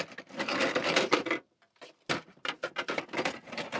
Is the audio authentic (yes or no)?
yes